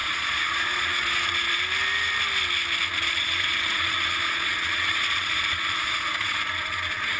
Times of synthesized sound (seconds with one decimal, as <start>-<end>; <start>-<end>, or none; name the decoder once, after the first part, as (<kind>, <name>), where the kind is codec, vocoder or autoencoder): 0.0-1.6 (vocoder, Vocos); 2.9-7.2